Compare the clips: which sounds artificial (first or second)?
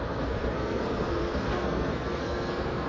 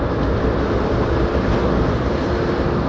first